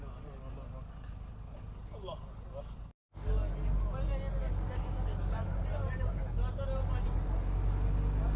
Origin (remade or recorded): recorded